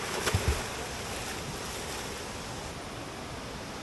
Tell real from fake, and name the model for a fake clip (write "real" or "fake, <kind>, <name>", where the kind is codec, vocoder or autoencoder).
real